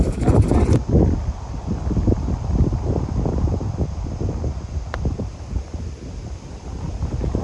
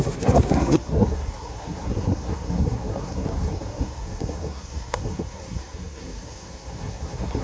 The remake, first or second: second